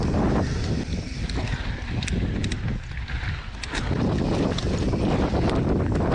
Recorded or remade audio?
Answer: recorded